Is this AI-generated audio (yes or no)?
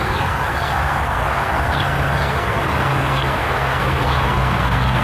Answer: yes